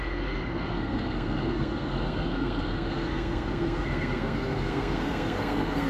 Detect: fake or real fake